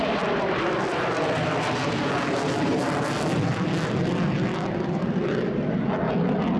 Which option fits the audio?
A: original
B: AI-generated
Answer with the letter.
A